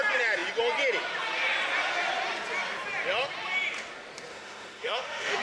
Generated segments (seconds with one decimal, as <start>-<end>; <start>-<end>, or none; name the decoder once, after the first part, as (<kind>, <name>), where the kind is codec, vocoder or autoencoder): 4.3-5.4 (autoencoder, DAC-VAE)